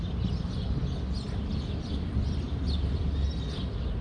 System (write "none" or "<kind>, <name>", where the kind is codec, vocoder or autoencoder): none